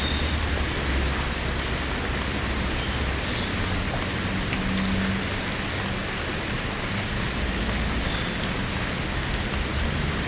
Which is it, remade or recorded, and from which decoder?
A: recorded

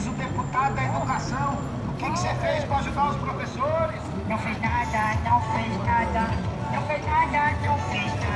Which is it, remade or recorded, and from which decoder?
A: recorded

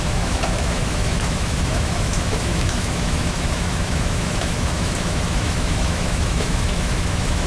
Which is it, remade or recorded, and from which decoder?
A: remade, autoencoder, DAC-VAE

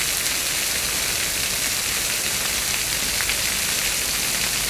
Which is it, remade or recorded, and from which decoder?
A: recorded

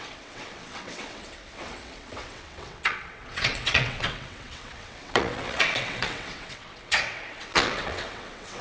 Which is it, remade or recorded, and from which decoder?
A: remade, vocoder, WaveNeXt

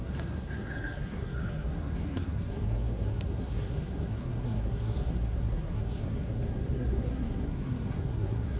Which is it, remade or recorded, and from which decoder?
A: remade, codec, SNAC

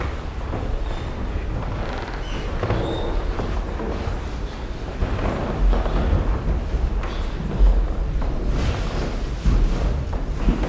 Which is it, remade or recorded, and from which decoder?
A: recorded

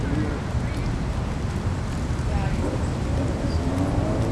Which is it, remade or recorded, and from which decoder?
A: recorded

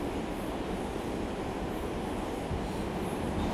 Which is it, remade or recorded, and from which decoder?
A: recorded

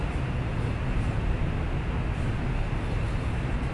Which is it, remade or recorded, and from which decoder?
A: recorded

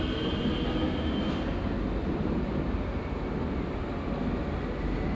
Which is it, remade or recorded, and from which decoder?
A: recorded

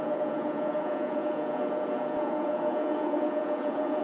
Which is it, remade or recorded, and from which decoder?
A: remade, vocoder, Vocos